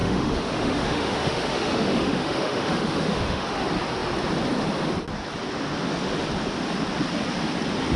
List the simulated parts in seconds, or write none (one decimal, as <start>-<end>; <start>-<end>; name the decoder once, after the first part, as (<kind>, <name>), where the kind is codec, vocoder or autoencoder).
0.0-3.6 (autoencoder, DAC-VAE)